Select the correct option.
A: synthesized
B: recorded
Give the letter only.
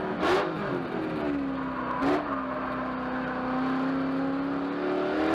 B